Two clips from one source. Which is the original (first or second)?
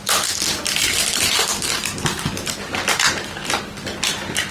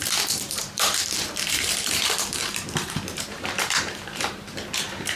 first